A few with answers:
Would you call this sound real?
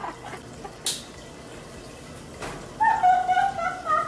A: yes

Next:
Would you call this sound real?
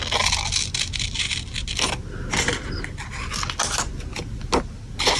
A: yes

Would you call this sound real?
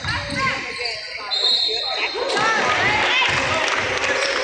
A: yes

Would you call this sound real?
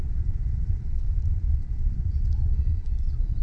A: no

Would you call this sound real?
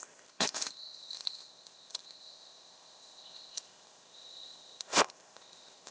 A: no